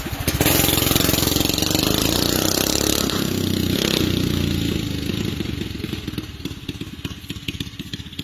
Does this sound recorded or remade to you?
recorded